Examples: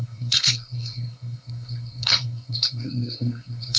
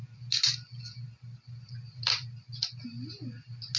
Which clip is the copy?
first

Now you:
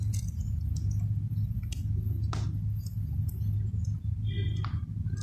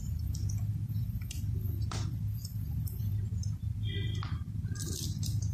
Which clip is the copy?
second